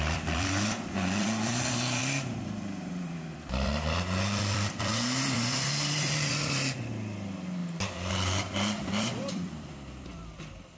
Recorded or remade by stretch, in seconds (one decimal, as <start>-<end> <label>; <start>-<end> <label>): 0.0-7.6 remade; 7.6-8.1 recorded; 8.1-10.8 remade